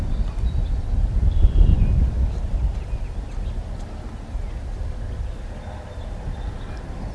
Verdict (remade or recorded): recorded